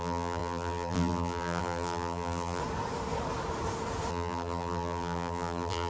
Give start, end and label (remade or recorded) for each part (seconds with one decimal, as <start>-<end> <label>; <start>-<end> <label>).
0.0-2.6 remade; 2.6-4.1 recorded; 4.1-5.9 remade